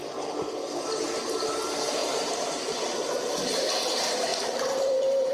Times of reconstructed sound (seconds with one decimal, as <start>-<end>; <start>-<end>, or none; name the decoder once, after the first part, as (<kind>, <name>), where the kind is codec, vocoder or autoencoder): 0.8-5.3 (vocoder, BigVGAN v2)